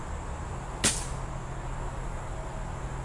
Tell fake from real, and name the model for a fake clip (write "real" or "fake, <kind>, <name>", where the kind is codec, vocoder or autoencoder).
real